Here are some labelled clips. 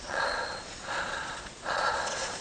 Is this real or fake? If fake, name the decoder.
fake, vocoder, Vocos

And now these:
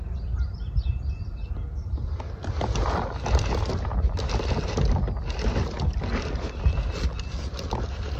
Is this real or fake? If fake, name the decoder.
real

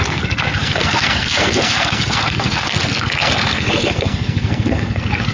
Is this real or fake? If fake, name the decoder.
fake, codec, SNAC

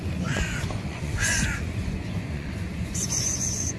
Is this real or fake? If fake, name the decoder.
fake, vocoder, Vocos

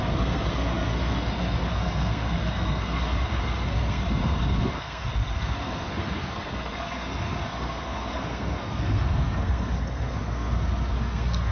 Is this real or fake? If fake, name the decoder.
fake, codec, SNAC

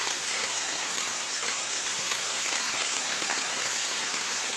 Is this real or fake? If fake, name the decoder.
fake, codec, SNAC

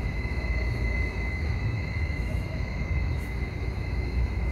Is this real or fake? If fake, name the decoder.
fake, autoencoder, DAC-VAE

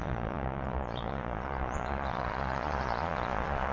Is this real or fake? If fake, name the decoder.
fake, vocoder, Vocos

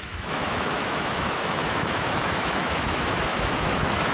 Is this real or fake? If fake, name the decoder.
fake, autoencoder, DAC-VAE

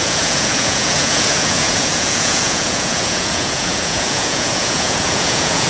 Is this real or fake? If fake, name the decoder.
fake, vocoder, Vocos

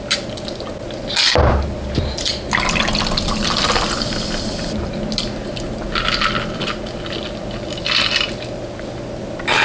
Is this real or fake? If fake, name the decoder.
real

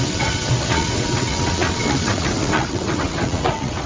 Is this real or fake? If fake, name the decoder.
fake, vocoder, WaveNeXt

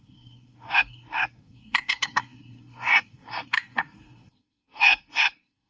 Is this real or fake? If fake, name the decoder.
fake, codec, SNAC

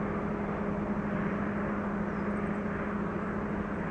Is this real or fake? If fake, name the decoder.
real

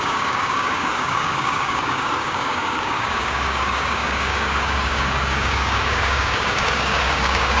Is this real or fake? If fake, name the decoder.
fake, codec, DAC